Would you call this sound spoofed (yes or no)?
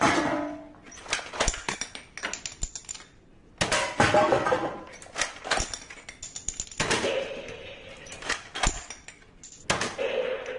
no